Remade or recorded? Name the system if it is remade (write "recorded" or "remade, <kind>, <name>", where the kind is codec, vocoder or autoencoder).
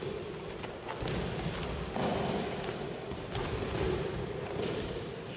remade, vocoder, BigVGAN v2